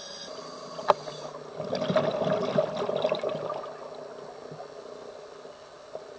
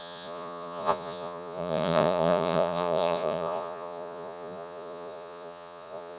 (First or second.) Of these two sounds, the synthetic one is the second